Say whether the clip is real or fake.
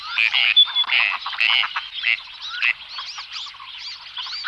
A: real